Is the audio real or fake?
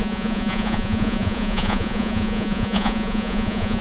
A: fake